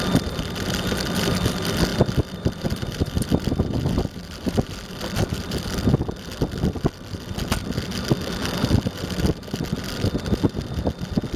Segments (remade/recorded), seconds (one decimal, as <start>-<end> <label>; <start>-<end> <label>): 0.0-1.9 recorded; 1.9-4.0 remade; 4.0-11.4 recorded